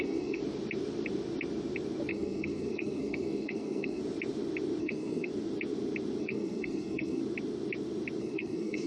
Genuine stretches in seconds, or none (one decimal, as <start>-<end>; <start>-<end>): 0.4-2.1; 4.0-4.8; 5.3-6.2; 7.2-8.2